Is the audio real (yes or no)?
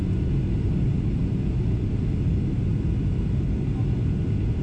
yes